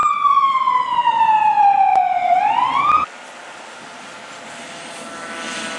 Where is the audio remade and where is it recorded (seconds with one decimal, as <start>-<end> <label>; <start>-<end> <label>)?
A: 0.0-1.2 remade; 1.2-1.9 recorded; 1.9-2.8 remade; 2.8-5.8 recorded